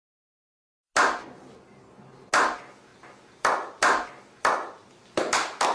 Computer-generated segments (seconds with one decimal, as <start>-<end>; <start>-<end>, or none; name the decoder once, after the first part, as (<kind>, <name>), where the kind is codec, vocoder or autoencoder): none